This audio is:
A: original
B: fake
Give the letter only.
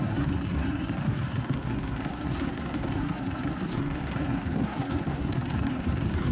B